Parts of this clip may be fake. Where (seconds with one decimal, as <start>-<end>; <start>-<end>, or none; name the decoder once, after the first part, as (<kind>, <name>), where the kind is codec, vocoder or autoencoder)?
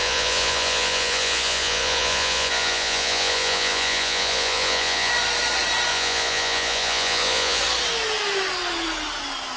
0.0-5.1 (vocoder, Vocos); 5.9-7.6